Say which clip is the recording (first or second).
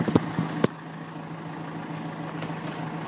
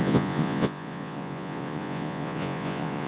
first